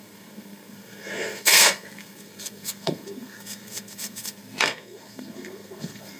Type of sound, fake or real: fake